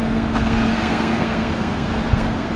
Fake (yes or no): yes